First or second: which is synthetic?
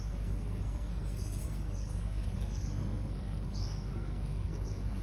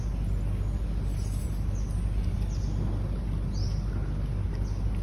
first